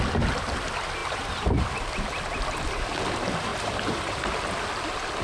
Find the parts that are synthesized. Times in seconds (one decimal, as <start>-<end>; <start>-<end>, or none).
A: 1.0-1.6; 3.5-4.2